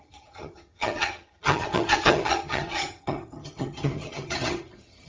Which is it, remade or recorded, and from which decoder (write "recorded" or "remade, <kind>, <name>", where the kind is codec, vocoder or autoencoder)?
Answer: remade, vocoder, HiFi-GAN